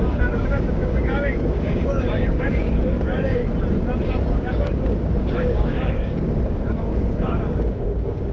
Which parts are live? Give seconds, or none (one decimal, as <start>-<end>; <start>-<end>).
3.4-4.3